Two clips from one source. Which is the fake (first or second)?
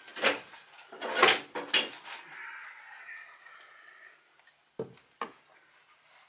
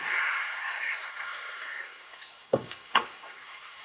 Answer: second